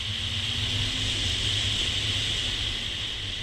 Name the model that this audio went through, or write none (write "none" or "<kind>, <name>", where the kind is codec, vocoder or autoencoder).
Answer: none